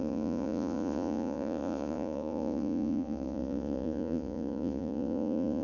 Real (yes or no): no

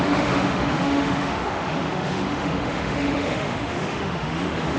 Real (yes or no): no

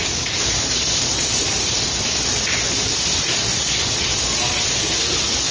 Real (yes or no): no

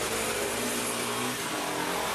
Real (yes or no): yes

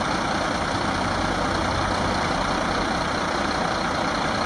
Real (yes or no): no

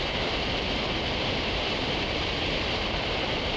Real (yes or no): no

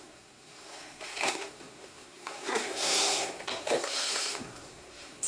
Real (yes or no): no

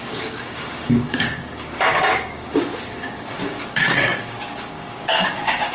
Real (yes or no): no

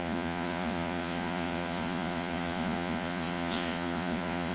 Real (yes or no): no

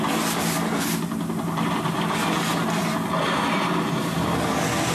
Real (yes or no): yes